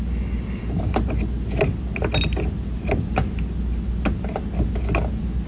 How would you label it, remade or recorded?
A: recorded